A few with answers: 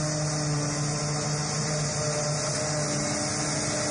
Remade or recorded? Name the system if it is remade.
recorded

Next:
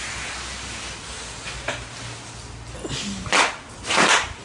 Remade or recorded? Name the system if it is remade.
recorded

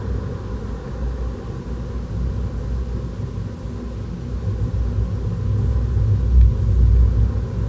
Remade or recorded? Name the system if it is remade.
recorded